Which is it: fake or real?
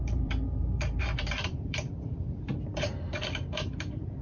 fake